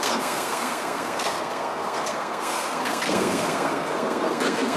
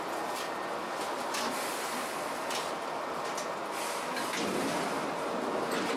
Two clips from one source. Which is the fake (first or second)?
first